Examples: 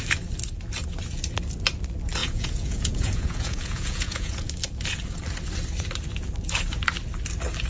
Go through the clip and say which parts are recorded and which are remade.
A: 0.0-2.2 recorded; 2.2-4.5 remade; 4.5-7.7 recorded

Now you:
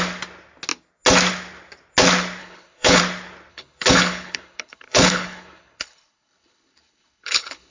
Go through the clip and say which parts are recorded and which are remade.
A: 0.0-2.4 recorded; 2.4-3.0 remade; 3.0-3.5 recorded; 3.5-7.7 remade

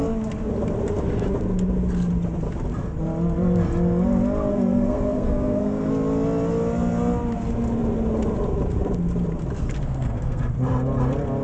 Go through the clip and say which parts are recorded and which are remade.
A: 0.0-4.5 recorded; 4.5-5.9 remade; 5.9-9.6 recorded; 9.6-10.4 remade; 10.4-11.4 recorded

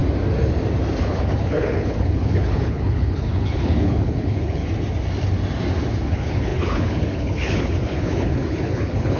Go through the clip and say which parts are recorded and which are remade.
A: 0.0-1.1 recorded; 1.1-4.6 remade; 4.6-6.1 recorded; 6.1-9.2 remade

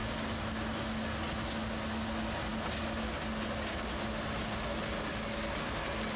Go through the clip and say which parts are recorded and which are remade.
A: 0.0-6.2 recorded

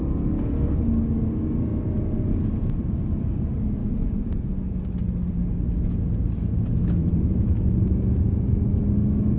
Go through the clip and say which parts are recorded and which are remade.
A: 0.0-3.8 recorded; 3.8-4.4 remade; 4.4-7.0 recorded; 7.0-7.6 remade; 7.6-9.4 recorded

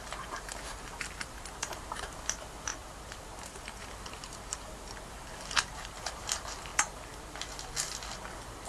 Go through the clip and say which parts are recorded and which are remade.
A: 0.0-6.7 remade; 6.7-8.7 recorded